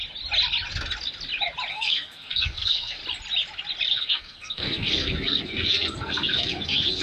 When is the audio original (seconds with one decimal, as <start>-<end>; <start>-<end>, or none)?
0.0-1.7; 3.0-3.9